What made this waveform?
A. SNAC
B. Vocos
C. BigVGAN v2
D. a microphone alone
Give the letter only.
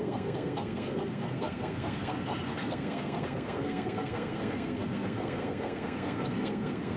A